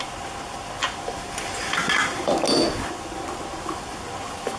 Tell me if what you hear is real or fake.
real